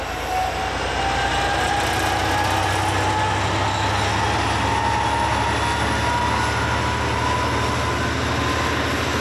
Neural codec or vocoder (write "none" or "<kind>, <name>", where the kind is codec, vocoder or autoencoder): none